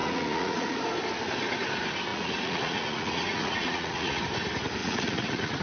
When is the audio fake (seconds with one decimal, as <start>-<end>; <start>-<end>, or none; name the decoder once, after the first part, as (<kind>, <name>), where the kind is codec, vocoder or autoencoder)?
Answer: 0.0-0.8 (vocoder, Vocos); 2.1-4.2; 4.8-5.6